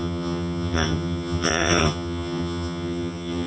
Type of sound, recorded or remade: remade